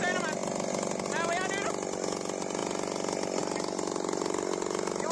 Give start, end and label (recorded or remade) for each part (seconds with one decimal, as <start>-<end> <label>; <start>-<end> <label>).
0.0-5.1 recorded